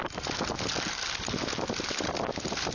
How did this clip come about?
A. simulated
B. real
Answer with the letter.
B